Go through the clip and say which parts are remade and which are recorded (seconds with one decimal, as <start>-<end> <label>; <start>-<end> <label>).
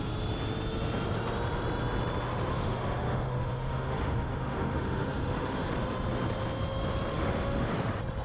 0.0-2.5 recorded; 2.5-5.7 remade; 5.7-7.1 recorded; 7.1-7.7 remade; 7.7-8.2 recorded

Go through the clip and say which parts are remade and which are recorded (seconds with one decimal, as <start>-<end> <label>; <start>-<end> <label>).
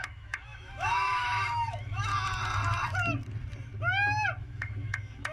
0.0-2.1 remade; 2.1-4.4 recorded; 4.4-5.3 remade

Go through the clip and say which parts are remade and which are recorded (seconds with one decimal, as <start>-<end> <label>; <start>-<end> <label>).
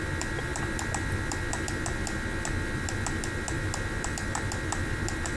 0.0-5.4 recorded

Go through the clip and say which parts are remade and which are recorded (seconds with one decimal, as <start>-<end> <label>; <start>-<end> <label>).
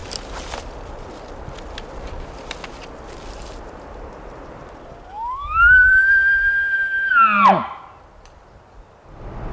0.0-5.1 recorded; 5.1-7.1 remade; 7.1-9.5 recorded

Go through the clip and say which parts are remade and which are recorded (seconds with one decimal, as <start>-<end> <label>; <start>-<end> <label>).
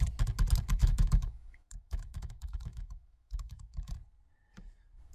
0.0-0.8 recorded; 0.8-3.9 remade; 3.9-5.1 recorded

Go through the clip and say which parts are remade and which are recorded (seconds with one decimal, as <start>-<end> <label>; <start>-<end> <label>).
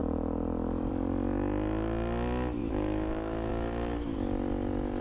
0.0-2.6 recorded; 2.6-3.5 remade; 3.5-5.0 recorded